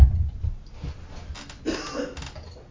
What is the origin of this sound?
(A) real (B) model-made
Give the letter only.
A